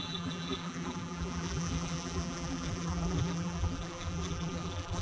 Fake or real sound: fake